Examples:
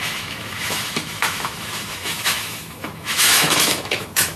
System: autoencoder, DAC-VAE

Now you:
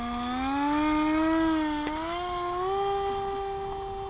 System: none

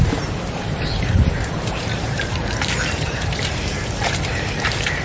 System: vocoder, BigVGAN v2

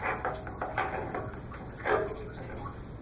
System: none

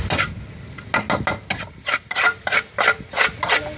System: none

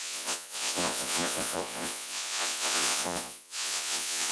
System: vocoder, Vocos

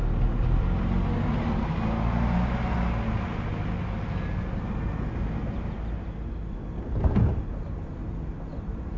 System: none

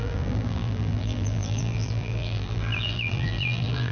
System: vocoder, BigVGAN v2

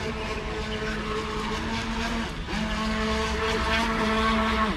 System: none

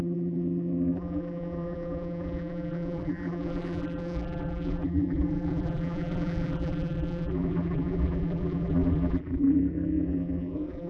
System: vocoder, BigVGAN v2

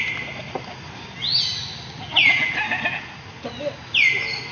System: none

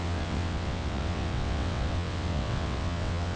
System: vocoder, WaveNeXt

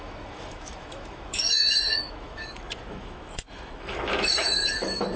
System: autoencoder, DAC-VAE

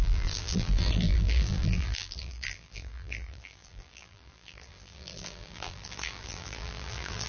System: vocoder, BigVGAN v2